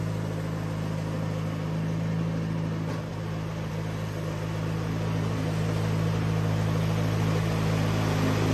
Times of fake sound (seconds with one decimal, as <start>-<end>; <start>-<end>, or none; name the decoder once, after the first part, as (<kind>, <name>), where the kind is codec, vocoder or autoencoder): none